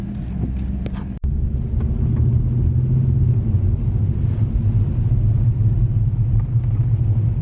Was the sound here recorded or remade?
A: recorded